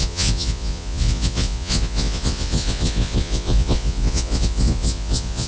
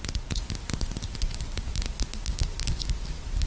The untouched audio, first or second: second